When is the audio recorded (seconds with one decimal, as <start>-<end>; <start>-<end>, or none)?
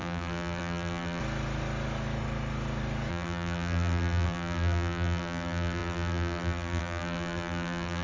1.2-3.1